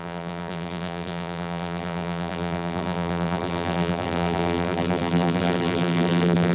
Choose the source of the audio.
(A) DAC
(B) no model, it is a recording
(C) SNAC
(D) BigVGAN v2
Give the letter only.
D